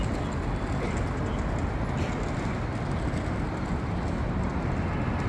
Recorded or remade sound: recorded